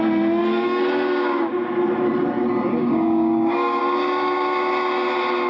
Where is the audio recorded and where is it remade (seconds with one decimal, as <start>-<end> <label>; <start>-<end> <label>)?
0.0-0.4 recorded; 0.4-1.5 remade; 1.5-2.8 recorded; 2.8-3.8 remade; 3.8-5.5 recorded